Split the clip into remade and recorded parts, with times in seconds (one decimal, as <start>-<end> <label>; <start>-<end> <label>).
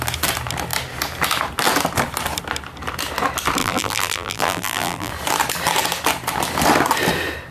0.0-3.6 recorded; 3.6-5.1 remade; 5.1-7.5 recorded